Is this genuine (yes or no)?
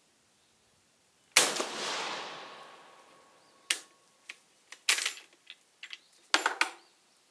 yes